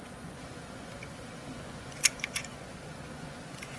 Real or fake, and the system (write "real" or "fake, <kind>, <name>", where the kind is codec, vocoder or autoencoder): fake, vocoder, Vocos